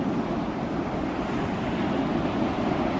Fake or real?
real